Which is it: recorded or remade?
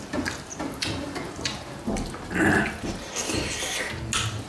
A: recorded